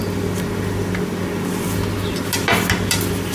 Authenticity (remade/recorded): recorded